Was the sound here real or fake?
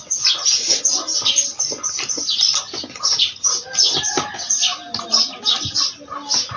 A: real